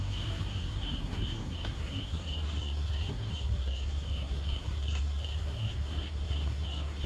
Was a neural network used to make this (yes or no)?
yes